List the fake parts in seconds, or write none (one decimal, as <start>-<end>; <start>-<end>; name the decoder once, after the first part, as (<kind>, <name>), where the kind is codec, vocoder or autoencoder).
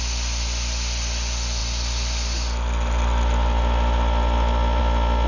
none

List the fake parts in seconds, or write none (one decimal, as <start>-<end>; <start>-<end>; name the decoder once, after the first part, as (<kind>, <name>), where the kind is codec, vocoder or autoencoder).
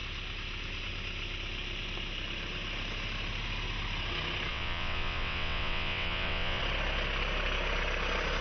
4.5-6.6 (vocoder, WaveNeXt)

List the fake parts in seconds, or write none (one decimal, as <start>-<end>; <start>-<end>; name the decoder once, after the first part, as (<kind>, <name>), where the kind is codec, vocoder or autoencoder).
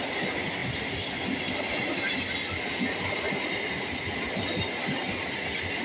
none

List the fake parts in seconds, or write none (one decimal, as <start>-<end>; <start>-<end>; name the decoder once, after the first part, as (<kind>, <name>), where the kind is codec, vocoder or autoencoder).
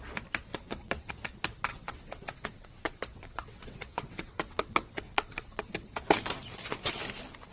0.5-1.1 (vocoder, WaveNeXt); 1.7-5.7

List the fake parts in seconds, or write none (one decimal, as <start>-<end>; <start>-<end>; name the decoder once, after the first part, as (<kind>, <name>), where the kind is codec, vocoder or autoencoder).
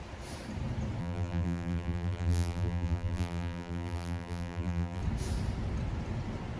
1.0-5.0 (vocoder, BigVGAN v2)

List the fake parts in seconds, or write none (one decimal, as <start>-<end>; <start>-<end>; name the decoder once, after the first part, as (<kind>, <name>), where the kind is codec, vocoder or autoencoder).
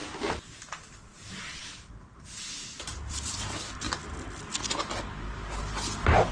none